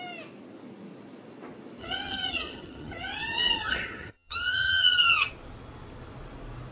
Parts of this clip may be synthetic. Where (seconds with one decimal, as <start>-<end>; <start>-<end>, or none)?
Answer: 1.8-5.3